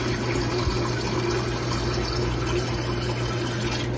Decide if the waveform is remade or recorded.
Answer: recorded